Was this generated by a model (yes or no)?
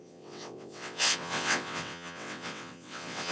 yes